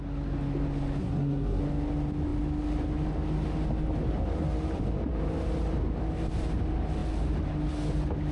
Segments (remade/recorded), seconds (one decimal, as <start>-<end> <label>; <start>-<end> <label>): 0.0-1.0 recorded; 1.0-1.6 remade; 1.6-8.3 recorded